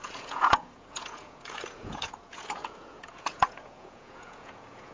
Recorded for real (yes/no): no